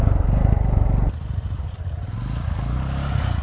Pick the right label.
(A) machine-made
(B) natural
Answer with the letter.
B